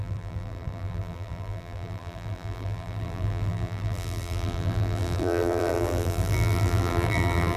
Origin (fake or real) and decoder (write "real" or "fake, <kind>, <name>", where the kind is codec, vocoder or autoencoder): fake, vocoder, BigVGAN v2